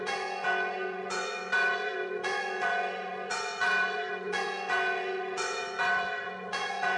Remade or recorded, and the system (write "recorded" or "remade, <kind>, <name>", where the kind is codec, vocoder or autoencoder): remade, vocoder, Vocos